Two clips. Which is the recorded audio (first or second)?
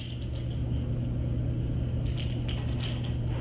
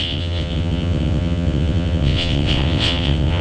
first